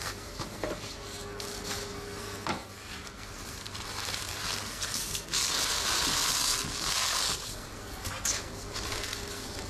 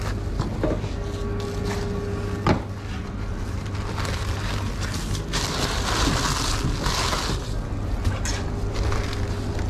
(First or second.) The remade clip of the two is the first